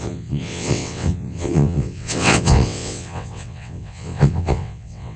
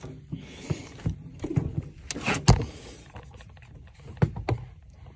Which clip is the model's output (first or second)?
first